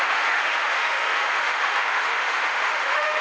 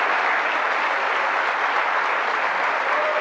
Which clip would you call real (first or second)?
second